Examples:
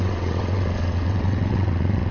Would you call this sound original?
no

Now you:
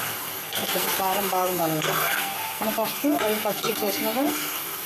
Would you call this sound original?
no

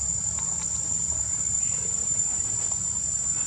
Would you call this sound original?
yes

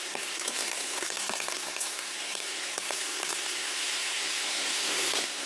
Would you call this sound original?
no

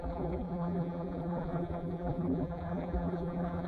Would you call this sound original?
no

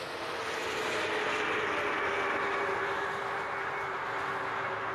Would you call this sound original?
yes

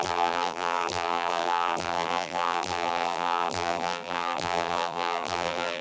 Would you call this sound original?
no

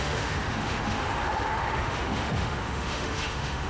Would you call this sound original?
no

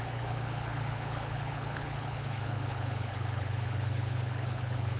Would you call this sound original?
no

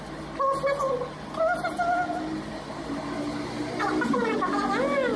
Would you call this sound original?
yes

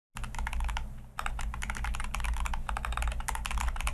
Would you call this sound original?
yes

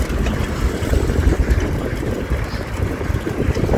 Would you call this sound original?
no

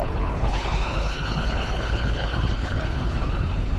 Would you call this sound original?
no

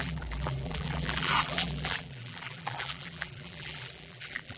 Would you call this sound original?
no